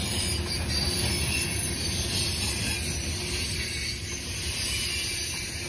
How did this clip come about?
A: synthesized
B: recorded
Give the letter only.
B